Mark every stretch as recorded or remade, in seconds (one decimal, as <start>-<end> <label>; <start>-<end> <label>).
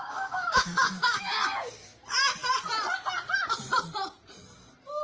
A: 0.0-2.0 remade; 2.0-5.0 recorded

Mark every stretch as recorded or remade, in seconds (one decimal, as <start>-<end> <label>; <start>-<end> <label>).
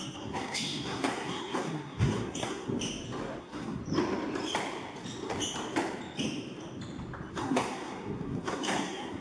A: 0.0-2.7 remade; 2.7-3.4 recorded; 3.4-3.8 remade; 3.8-7.3 recorded; 7.3-9.2 remade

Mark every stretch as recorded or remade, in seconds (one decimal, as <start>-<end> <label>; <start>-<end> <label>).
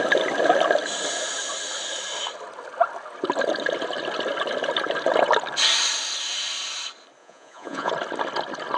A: 0.0-7.2 recorded; 7.2-7.9 remade; 7.9-8.8 recorded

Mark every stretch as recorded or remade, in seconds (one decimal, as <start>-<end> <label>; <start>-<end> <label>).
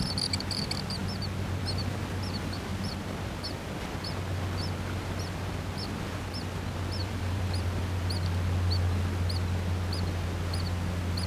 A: 0.0-2.7 recorded; 2.7-3.3 remade; 3.3-7.0 recorded; 7.0-7.8 remade; 7.8-11.3 recorded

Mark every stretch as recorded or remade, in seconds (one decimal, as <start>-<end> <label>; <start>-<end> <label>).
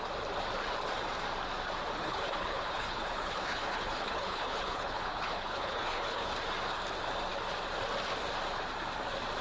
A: 0.0-2.0 recorded; 2.0-6.3 remade; 6.3-9.4 recorded